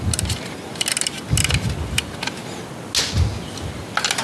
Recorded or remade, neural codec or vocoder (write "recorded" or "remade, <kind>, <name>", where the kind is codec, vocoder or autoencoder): recorded